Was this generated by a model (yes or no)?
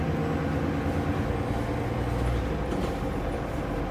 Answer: no